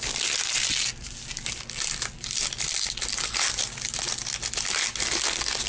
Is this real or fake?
real